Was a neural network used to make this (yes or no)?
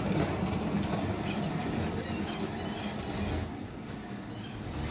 no